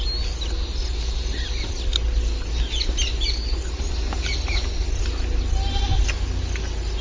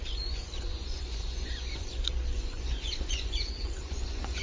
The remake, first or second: second